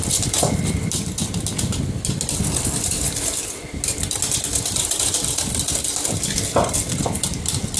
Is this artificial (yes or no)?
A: no